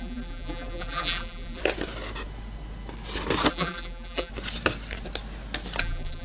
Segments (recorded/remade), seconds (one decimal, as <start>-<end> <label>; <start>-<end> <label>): 0.0-1.6 remade; 1.6-3.5 recorded; 3.5-4.3 remade; 4.3-5.8 recorded; 5.8-6.2 remade